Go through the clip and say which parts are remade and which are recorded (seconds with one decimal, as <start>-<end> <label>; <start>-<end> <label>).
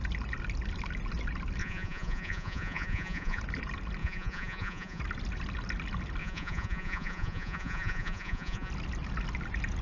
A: 0.0-1.6 recorded; 1.6-3.4 remade; 3.4-4.0 recorded; 4.0-5.0 remade; 5.0-6.2 recorded; 6.2-8.7 remade; 8.7-9.8 recorded